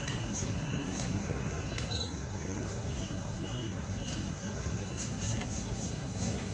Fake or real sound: fake